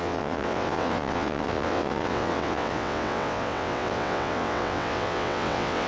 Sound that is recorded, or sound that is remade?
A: remade